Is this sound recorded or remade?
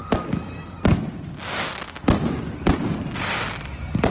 recorded